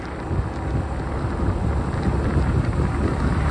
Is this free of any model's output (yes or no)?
yes